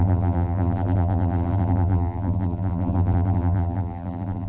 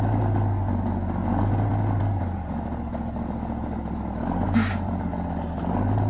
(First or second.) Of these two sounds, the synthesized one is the first